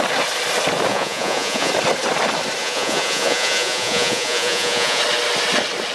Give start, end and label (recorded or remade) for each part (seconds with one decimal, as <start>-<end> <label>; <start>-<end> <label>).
0.0-0.9 recorded; 0.9-1.7 remade; 1.7-2.6 recorded; 2.6-5.0 remade; 5.0-5.9 recorded

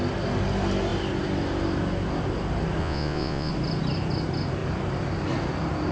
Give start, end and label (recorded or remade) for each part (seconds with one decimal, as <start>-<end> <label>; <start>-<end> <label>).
0.0-2.8 recorded; 2.8-3.5 remade; 3.5-5.9 recorded

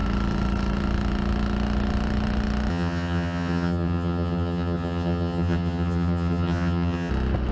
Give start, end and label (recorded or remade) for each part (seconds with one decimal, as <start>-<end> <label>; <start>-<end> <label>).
0.0-2.7 recorded; 2.7-7.1 remade; 7.1-7.5 recorded

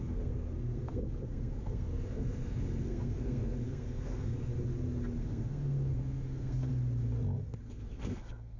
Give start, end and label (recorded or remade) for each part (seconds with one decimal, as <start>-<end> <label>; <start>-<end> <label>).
0.0-4.5 remade; 4.5-5.2 recorded; 5.2-6.7 remade; 6.7-7.6 recorded; 7.6-8.6 remade

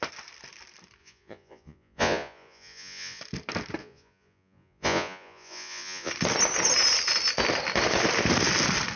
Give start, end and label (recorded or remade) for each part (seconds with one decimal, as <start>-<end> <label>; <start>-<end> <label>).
0.0-1.0 recorded; 1.0-3.2 remade; 3.2-3.8 recorded; 3.8-6.1 remade; 6.1-9.0 recorded

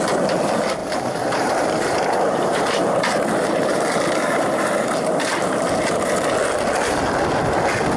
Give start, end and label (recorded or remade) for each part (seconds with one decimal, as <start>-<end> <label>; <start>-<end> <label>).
0.0-0.8 recorded; 0.8-5.6 remade; 5.6-8.0 recorded